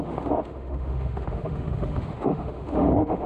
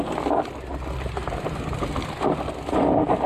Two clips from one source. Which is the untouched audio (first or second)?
second